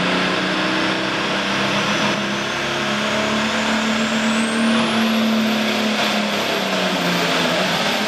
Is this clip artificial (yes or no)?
no